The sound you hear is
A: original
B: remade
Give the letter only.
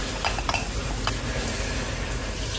A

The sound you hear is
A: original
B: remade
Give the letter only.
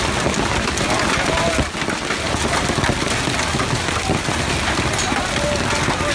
A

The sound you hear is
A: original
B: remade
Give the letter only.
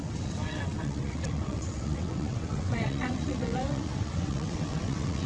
B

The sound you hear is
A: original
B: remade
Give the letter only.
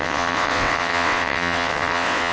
B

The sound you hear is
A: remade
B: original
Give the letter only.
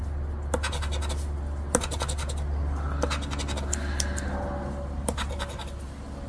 B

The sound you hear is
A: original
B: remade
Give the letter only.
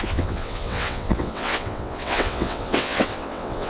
B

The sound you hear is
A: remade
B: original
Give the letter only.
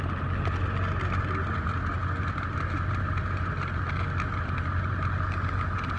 B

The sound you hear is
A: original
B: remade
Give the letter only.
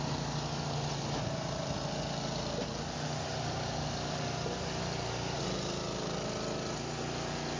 A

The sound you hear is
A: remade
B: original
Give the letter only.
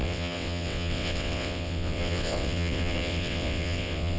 A